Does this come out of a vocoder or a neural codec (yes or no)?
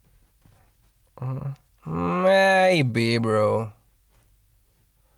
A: no